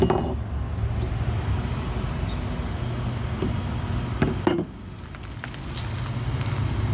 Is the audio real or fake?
real